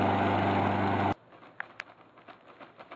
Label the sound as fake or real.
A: real